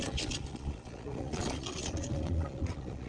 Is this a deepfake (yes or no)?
yes